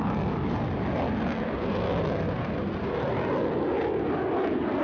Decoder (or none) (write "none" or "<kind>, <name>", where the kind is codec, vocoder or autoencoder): none